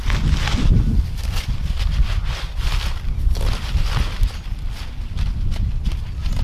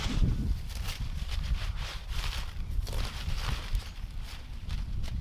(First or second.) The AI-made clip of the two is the second